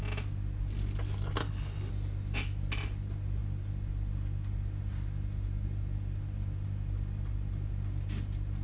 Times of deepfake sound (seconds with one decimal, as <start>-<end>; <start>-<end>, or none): 1.4-1.9